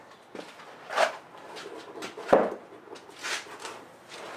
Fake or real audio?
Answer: real